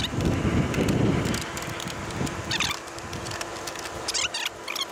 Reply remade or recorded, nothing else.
recorded